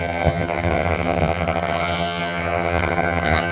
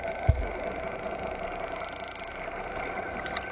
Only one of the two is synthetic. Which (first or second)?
first